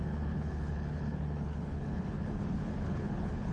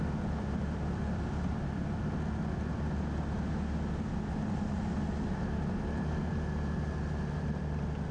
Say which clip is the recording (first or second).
second